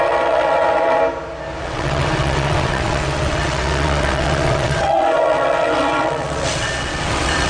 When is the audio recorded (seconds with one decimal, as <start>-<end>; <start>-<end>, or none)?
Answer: 1.0-1.6